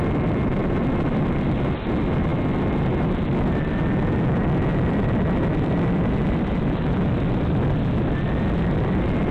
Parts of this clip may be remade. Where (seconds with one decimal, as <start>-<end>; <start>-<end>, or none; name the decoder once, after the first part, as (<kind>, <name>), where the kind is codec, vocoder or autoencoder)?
0.6-1.5 (vocoder, BigVGAN v2); 4.7-8.0